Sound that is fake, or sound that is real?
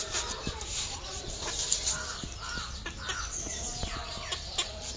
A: real